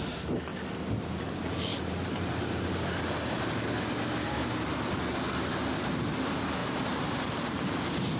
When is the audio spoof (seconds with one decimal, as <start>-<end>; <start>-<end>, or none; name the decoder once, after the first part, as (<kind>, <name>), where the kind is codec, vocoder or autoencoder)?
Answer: 1.7-3.4 (vocoder, BigVGAN v2); 6.6-7.6